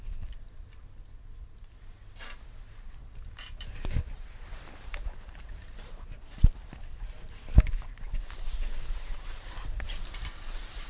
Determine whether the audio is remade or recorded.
remade